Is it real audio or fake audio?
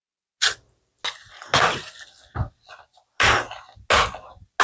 real